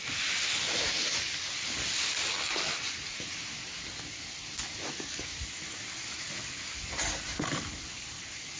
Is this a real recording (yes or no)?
yes